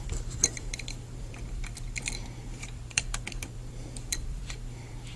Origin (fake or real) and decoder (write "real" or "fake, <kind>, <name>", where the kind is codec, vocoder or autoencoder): fake, vocoder, BigVGAN v2